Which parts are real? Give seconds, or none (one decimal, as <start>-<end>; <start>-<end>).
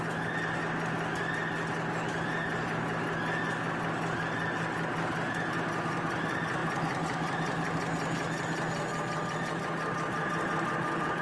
0.0-11.2